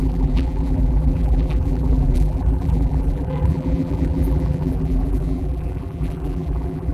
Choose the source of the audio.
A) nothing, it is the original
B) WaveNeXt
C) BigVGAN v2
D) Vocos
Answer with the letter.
C